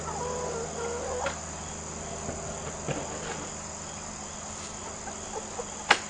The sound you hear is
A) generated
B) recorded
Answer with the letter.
B